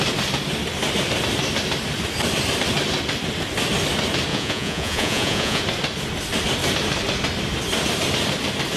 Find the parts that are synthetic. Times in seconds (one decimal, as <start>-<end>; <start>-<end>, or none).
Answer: 4.3-5.6